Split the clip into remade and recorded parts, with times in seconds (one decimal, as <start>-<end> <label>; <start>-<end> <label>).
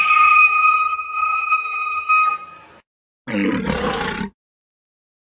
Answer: 0.0-2.1 remade; 2.1-5.3 recorded